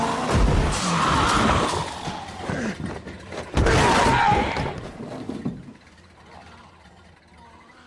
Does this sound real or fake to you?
real